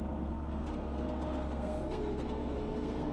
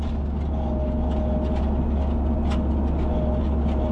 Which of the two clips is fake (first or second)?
first